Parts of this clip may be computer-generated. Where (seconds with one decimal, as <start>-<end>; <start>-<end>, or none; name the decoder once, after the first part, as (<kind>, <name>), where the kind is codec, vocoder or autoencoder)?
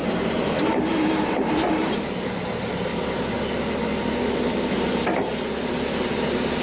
0.0-2.9 (vocoder, BigVGAN v2); 5.7-6.6